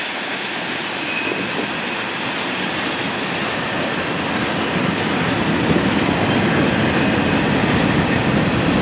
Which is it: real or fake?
real